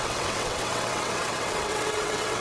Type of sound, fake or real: fake